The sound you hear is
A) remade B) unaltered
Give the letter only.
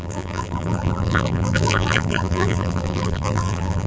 A